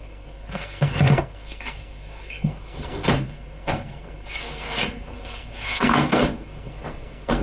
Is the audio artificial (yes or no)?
yes